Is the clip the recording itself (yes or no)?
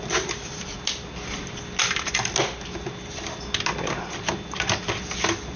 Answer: yes